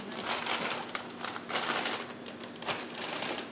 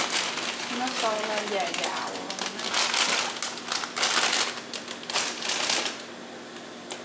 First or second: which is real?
second